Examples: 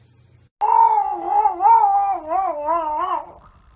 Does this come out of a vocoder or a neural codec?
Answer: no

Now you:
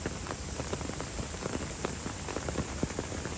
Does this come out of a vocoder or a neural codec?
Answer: no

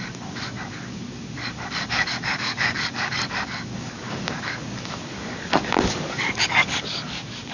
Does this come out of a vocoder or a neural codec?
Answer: yes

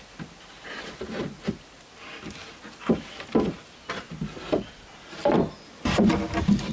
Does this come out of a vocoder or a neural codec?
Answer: no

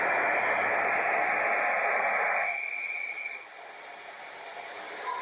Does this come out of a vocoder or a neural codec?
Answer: no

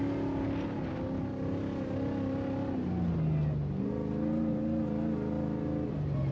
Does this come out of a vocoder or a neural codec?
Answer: no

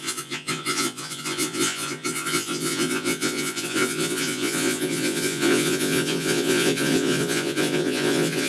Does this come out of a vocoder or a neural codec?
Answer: yes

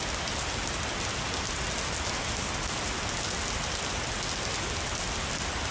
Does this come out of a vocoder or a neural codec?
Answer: no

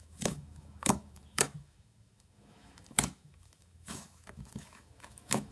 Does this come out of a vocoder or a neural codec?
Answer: yes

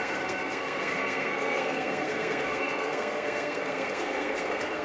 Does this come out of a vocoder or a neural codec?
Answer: yes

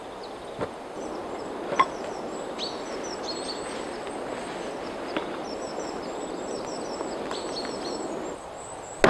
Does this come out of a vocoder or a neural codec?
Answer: no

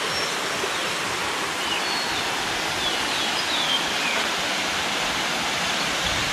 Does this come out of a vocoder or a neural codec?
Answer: no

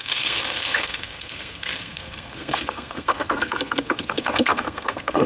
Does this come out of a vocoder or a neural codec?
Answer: yes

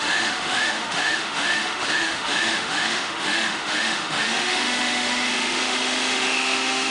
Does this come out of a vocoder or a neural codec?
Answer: yes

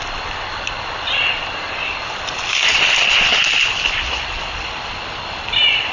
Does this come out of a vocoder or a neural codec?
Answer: no